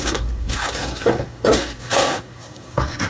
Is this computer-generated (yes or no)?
yes